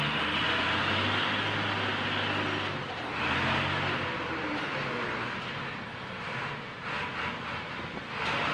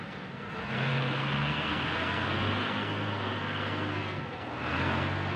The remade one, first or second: second